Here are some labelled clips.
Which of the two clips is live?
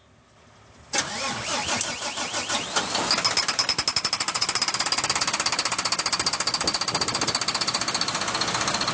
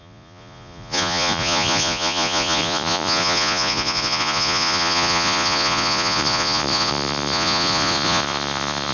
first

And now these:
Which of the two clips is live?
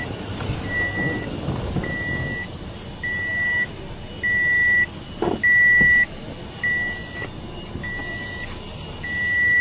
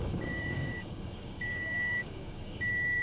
first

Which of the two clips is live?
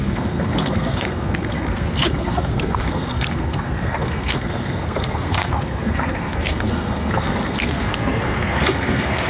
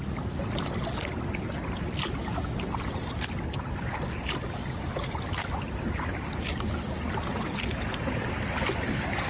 second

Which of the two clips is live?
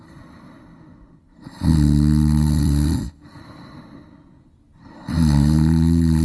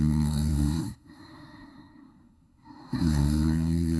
first